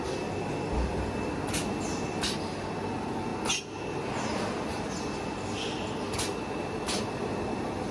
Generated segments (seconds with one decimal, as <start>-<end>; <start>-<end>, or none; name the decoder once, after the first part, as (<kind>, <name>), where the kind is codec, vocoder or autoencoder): none